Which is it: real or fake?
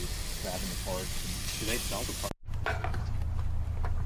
real